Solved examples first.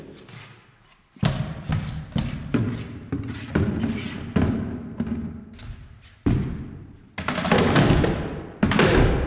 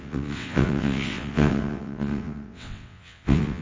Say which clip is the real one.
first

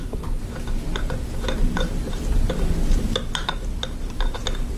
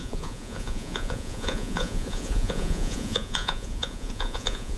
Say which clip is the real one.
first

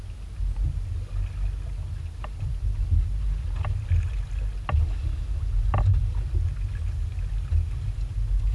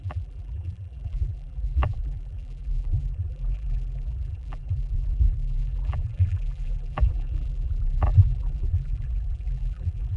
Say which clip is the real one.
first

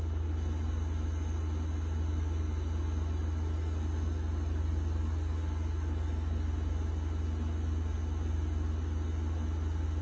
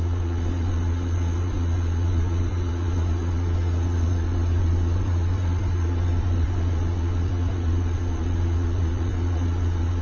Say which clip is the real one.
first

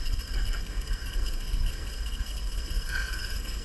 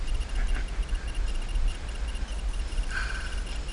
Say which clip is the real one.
second